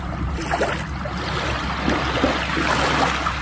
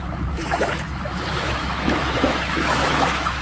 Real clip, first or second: first